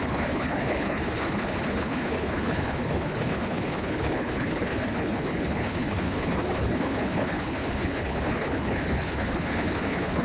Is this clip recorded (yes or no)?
no